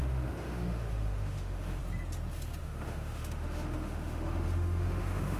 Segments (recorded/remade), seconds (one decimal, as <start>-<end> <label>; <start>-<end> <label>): 0.0-1.8 remade; 1.8-2.6 recorded; 2.6-5.4 remade